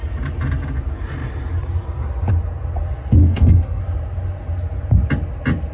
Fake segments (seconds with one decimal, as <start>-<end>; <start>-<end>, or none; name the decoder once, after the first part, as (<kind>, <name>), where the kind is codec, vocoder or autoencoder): 3.2-3.8 (codec, SNAC)